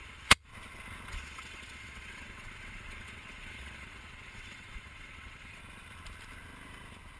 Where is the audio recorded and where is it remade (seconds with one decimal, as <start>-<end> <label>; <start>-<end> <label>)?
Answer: 0.0-0.5 remade; 0.5-1.1 recorded; 1.1-5.6 remade; 5.6-7.2 recorded